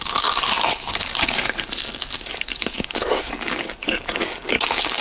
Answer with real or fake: fake